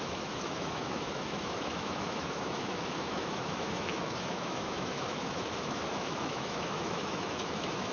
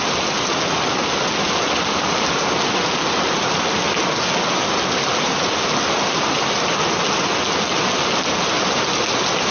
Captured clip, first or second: second